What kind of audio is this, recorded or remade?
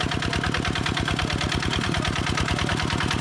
recorded